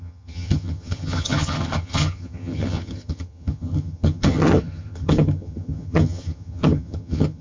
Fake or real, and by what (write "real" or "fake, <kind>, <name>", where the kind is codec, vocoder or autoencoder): fake, vocoder, HiFi-GAN